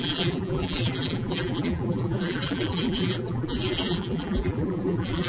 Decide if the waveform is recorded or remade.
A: remade